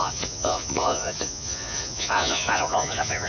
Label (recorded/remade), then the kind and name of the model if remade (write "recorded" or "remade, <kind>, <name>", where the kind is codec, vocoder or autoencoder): remade, vocoder, Vocos